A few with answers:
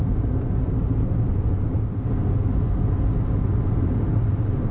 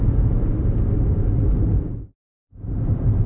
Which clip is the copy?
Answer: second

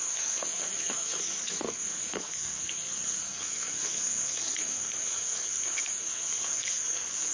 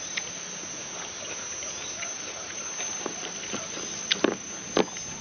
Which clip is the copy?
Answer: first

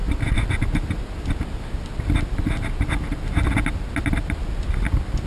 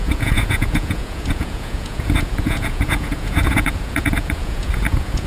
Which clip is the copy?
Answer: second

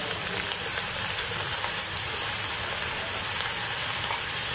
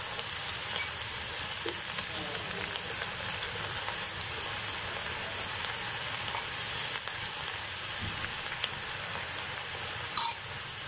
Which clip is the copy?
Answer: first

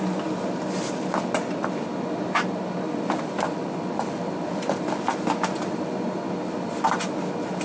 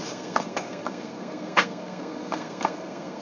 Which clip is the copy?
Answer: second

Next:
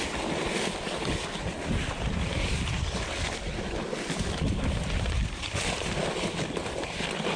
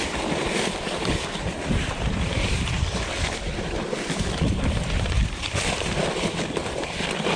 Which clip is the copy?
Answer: second